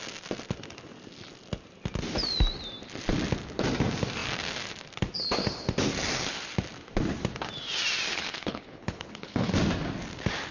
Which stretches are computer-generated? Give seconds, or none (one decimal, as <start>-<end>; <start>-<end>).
8.1-9.5